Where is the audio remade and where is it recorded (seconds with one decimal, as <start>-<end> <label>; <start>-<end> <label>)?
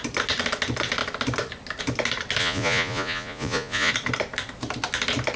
0.0-2.4 recorded; 2.4-3.9 remade; 3.9-5.4 recorded